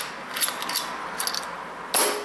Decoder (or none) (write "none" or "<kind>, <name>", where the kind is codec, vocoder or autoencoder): none